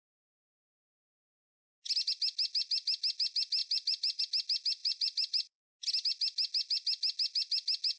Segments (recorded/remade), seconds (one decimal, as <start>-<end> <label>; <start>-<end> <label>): 0.0-3.6 recorded; 3.6-4.2 remade; 4.2-4.8 recorded; 4.8-5.7 remade; 5.7-8.0 recorded